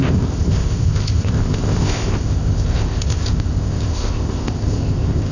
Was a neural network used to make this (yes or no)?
yes